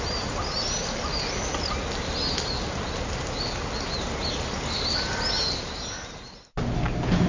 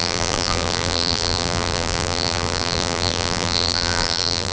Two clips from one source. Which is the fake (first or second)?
second